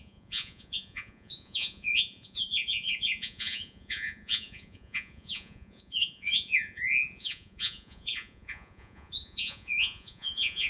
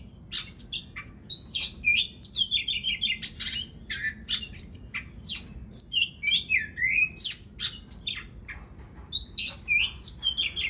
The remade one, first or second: first